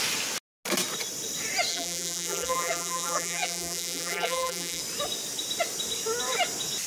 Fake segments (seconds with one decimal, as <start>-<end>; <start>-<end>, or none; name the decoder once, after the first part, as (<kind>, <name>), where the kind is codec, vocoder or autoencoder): 1.7-4.8 (vocoder, BigVGAN v2)